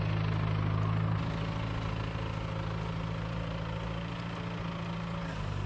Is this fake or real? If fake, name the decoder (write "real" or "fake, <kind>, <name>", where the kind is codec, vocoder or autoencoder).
real